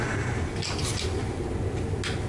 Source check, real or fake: real